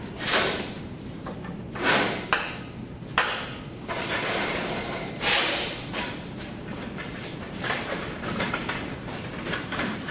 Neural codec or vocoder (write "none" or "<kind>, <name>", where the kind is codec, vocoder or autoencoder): vocoder, BigVGAN v2